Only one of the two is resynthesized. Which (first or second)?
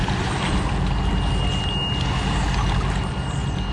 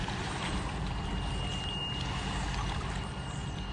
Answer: second